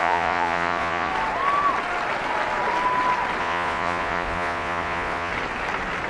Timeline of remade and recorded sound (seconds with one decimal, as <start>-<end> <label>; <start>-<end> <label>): 0.0-1.1 remade; 1.1-3.4 recorded; 3.4-5.3 remade; 5.3-6.1 recorded